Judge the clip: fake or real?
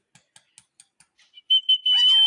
real